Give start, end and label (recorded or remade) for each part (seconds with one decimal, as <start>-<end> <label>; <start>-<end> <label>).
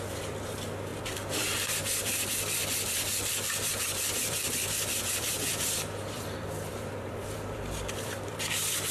0.0-8.9 remade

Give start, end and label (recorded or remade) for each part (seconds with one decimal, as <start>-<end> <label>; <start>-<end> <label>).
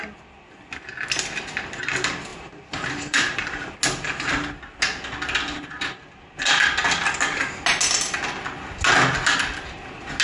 0.0-2.3 recorded; 2.3-3.7 remade; 3.7-10.2 recorded